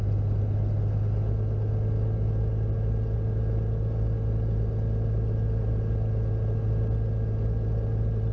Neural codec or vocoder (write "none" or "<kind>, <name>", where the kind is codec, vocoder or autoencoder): none